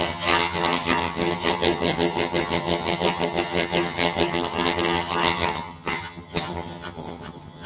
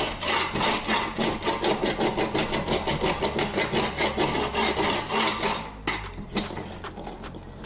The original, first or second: second